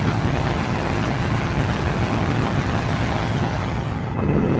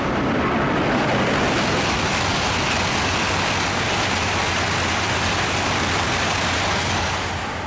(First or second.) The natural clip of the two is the second